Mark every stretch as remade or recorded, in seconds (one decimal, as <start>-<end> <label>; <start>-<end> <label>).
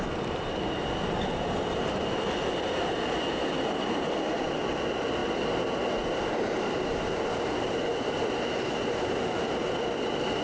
0.0-10.4 recorded